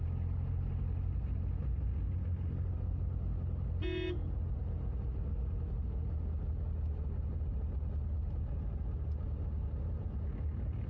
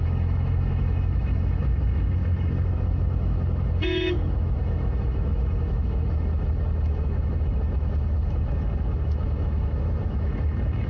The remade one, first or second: second